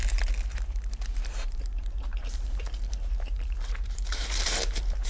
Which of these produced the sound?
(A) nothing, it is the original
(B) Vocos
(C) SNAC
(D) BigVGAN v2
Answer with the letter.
D